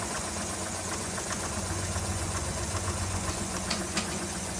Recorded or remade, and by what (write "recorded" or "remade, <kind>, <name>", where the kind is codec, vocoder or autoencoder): remade, vocoder, Vocos